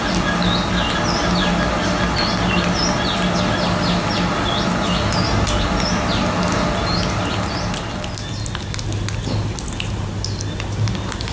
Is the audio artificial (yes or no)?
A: no